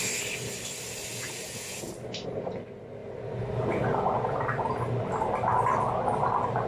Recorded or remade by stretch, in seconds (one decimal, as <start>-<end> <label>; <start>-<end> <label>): 0.0-1.1 recorded; 1.1-1.9 remade; 1.9-6.7 recorded